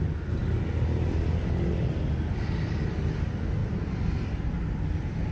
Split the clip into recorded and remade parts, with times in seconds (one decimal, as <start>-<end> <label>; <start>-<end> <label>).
0.0-5.3 recorded